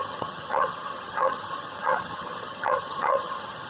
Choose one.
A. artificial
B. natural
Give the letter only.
A